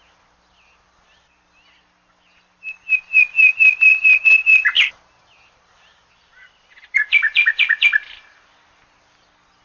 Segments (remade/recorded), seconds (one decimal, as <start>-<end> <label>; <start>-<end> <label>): 0.0-3.9 recorded; 3.9-8.8 remade; 8.8-9.6 recorded